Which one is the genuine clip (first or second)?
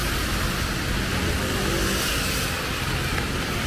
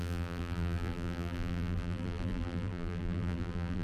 first